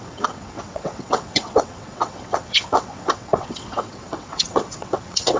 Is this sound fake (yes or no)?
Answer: yes